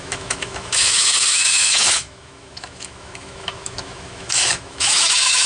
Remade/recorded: remade